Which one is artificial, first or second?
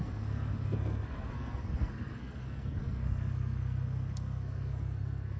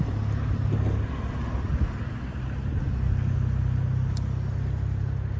first